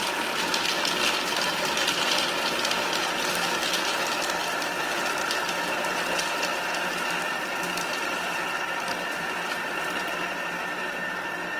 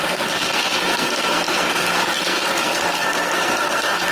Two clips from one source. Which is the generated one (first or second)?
second